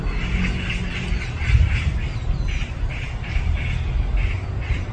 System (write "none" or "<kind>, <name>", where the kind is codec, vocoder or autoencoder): none